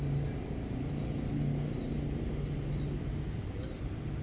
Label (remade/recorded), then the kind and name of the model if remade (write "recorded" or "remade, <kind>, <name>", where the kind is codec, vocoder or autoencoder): recorded